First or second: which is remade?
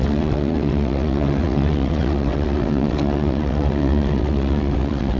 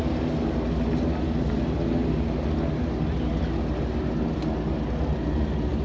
first